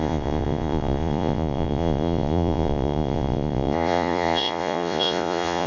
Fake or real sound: fake